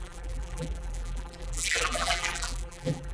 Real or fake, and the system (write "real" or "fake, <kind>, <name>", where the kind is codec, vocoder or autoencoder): fake, vocoder, BigVGAN v2